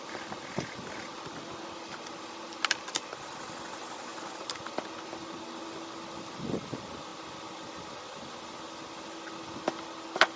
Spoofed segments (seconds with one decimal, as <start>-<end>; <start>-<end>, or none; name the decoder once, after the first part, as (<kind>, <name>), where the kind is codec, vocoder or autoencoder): none